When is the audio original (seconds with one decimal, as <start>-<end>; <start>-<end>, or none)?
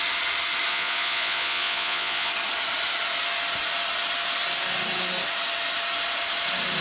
0.0-0.7; 2.3-6.8